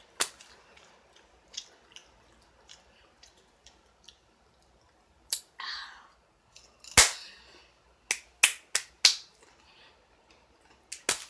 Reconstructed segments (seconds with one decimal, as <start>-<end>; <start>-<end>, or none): 2.0-5.4